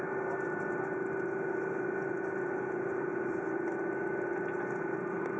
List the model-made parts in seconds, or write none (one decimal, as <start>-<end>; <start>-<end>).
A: none